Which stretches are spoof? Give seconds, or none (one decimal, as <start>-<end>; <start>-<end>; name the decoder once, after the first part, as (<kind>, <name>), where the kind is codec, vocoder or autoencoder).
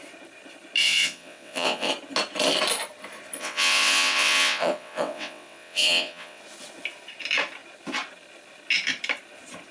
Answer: 0.8-1.9 (vocoder, WaveNeXt); 3.4-6.4